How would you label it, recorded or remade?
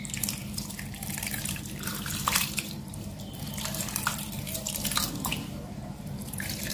remade